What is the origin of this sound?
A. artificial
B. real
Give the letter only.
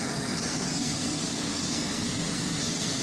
A